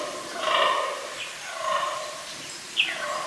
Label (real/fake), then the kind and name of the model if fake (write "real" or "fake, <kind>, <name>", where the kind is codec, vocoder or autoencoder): real